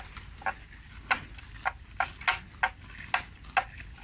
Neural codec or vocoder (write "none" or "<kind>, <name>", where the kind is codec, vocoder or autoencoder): none